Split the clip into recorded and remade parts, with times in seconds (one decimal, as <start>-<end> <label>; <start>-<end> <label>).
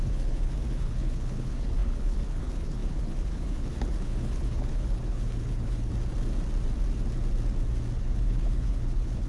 0.0-5.9 remade; 5.9-8.0 recorded; 8.0-9.3 remade